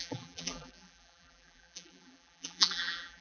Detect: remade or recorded remade